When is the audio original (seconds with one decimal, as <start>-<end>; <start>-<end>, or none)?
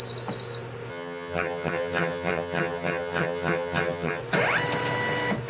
0.0-0.9; 4.2-5.5